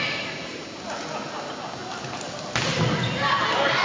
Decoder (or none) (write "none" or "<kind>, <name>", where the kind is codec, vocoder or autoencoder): none